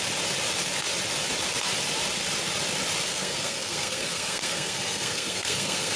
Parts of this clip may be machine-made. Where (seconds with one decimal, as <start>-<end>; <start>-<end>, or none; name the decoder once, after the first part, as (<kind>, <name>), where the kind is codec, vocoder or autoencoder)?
3.1-6.0 (codec, SNAC)